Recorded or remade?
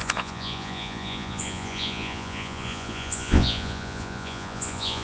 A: remade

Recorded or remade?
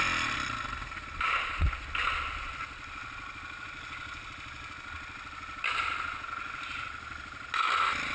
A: recorded